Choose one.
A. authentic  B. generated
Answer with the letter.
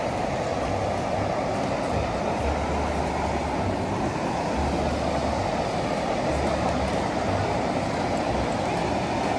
A